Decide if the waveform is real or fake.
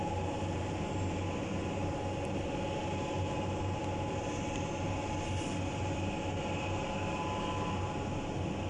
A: real